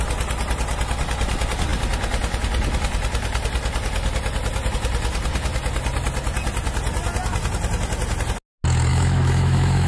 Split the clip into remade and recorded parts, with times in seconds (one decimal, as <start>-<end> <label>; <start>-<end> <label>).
0.0-8.9 recorded; 8.9-9.9 remade